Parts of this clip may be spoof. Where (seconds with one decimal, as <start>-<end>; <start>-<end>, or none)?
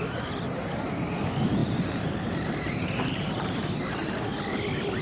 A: 1.6-3.6